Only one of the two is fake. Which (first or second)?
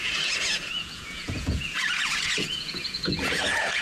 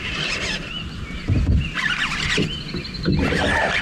first